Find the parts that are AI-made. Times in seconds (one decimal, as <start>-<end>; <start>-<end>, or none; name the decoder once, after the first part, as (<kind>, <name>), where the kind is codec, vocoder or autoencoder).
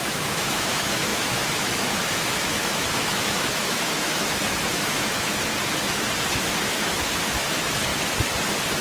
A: 0.0-5.5 (autoencoder, DAC-VAE); 6.3-7.9